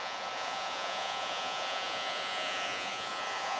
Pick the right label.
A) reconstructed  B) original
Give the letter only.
A